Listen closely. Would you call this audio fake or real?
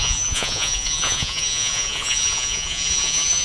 fake